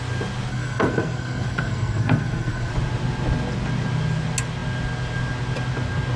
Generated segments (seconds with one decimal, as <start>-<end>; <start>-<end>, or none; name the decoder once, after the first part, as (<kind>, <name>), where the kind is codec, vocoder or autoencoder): 0.5-2.7 (codec, SNAC)